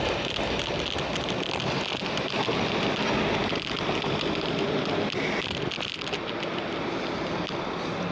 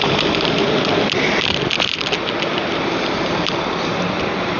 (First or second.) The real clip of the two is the first